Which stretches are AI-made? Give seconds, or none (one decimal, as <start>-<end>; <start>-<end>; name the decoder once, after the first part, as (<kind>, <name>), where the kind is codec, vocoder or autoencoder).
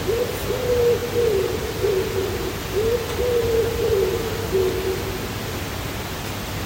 none